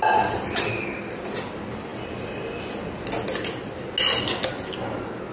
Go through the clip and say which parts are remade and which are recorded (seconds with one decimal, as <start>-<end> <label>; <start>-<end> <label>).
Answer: 0.0-5.3 recorded